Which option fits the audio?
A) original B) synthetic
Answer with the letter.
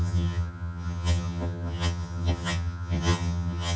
B